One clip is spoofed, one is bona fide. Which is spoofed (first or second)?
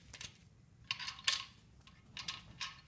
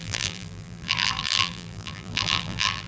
second